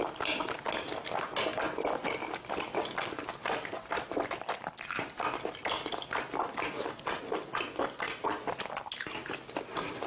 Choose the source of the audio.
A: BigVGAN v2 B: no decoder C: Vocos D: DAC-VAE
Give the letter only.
B